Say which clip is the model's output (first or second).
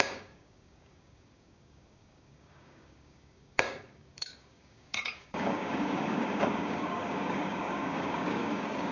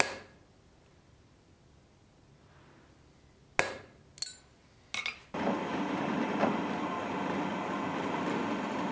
first